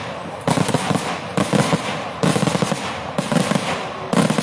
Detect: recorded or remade recorded